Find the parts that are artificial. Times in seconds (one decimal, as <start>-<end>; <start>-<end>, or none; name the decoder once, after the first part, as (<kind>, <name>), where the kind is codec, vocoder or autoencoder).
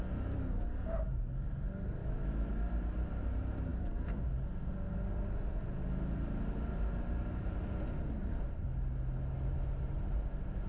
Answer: 2.0-2.5 (autoencoder, DAC-VAE)